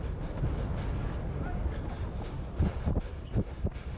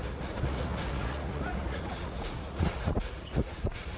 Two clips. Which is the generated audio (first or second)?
second